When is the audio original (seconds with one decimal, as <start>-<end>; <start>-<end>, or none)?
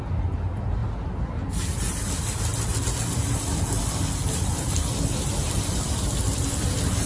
0.0-7.1